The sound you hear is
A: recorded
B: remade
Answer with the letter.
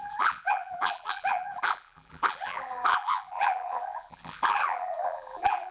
B